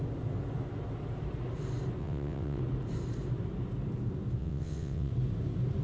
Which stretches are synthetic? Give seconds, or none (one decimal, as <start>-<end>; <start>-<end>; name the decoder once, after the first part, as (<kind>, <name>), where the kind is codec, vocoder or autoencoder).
2.0-2.6 (vocoder, WaveNeXt); 4.4-5.1